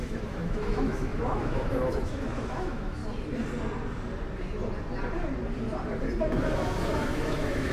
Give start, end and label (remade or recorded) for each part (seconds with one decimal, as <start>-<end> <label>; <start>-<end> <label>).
0.0-3.0 remade; 3.0-6.2 recorded; 6.2-7.7 remade